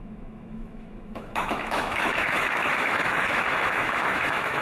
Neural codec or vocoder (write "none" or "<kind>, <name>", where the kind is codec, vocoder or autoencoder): autoencoder, DAC-VAE